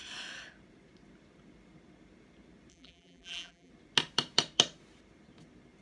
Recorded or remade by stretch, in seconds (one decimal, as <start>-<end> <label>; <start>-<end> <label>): 0.0-2.7 recorded; 2.7-3.7 remade; 3.7-5.8 recorded